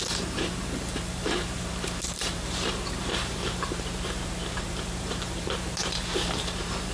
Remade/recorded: remade